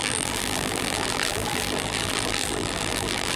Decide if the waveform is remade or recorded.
remade